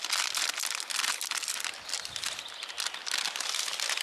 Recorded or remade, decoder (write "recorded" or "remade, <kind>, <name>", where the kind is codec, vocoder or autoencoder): recorded